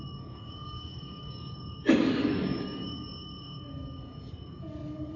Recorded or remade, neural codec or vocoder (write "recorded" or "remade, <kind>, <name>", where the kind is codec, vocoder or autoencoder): remade, codec, DAC